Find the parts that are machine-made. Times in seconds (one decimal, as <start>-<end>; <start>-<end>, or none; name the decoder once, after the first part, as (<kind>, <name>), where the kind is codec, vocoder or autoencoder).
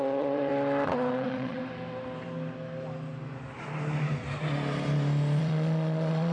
0.0-0.5 (vocoder, Vocos); 1.1-1.6; 5.4-6.3